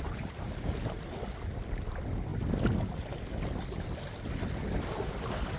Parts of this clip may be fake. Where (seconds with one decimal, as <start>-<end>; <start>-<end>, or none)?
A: none